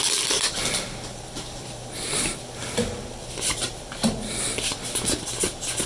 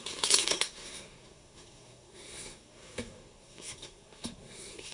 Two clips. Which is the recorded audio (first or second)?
first